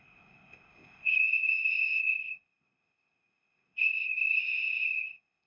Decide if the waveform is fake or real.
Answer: fake